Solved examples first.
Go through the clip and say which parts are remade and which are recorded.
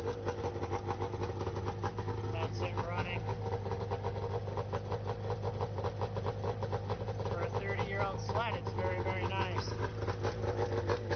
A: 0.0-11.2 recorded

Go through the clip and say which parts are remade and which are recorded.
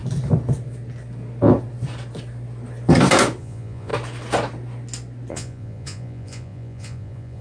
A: 0.0-3.4 recorded; 3.4-3.9 remade; 3.9-5.3 recorded; 5.3-7.4 remade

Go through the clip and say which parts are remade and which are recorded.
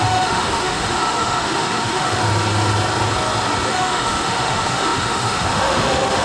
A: 0.0-2.2 remade; 2.2-3.7 recorded; 3.7-6.2 remade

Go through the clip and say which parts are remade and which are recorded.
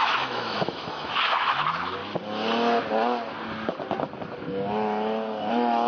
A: 0.0-2.0 remade; 2.0-5.5 recorded; 5.5-5.9 remade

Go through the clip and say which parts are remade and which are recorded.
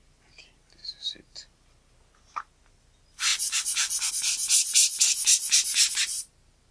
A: 0.0-3.3 recorded; 3.3-4.1 remade; 4.1-6.7 recorded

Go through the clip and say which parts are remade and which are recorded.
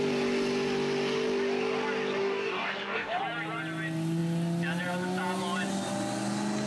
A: 0.0-2.2 recorded; 2.2-3.2 remade; 3.2-6.7 recorded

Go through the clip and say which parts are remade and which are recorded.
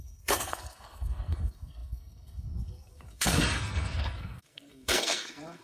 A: 0.0-5.6 remade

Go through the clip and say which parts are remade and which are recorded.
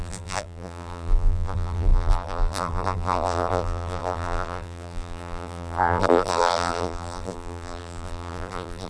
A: 0.0-8.9 remade